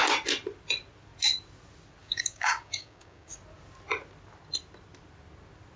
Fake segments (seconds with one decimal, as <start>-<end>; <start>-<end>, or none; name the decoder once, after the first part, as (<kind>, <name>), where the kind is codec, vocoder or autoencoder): 2.0-3.3 (codec, DAC)